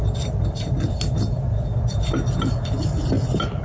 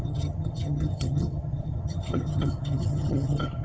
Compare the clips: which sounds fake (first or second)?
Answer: second